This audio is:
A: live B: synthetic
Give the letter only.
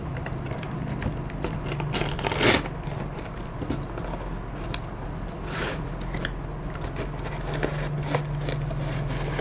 A